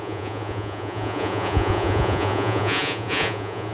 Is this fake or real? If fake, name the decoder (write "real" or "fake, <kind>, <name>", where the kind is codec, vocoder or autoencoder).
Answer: fake, vocoder, Vocos